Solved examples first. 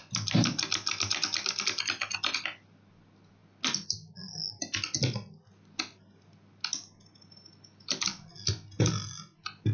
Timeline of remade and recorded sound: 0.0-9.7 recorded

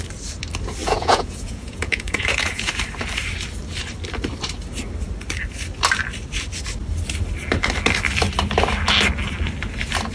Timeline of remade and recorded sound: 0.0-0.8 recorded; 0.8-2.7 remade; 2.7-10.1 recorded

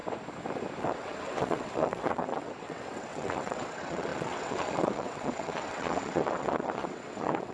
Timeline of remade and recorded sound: 0.0-0.8 recorded; 0.8-7.5 remade